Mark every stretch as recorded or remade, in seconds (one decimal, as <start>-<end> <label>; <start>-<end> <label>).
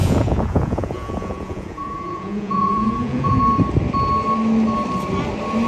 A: 0.0-3.4 remade; 3.4-5.7 recorded